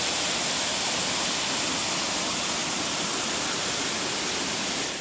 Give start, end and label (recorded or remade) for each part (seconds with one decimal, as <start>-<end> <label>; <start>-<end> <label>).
0.0-5.0 recorded

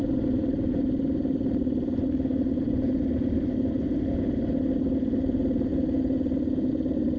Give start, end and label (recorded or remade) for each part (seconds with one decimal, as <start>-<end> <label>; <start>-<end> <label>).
0.0-7.2 recorded

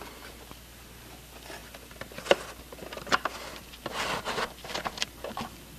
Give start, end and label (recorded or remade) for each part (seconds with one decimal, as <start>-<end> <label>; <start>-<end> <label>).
0.0-5.8 recorded

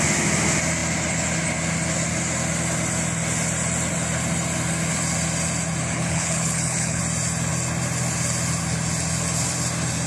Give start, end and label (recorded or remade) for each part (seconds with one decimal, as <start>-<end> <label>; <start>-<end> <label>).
0.0-5.8 recorded; 5.8-7.0 remade; 7.0-10.1 recorded